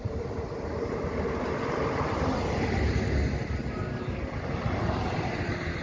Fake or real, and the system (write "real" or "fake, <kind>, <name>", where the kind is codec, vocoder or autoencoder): real